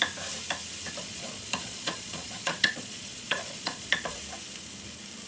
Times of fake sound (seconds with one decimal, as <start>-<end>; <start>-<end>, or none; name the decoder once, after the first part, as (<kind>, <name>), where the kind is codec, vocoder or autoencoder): 1.0-4.2 (vocoder, Vocos)